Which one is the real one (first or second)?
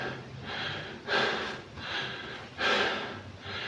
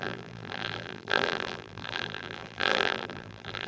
first